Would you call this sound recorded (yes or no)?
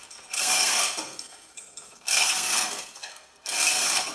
no